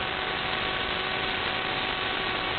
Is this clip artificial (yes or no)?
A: no